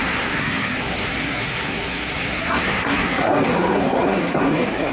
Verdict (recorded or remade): remade